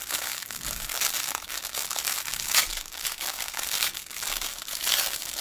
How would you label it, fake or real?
fake